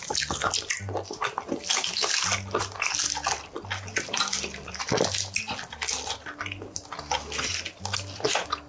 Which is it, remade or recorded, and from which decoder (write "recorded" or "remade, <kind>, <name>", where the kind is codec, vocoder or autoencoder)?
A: recorded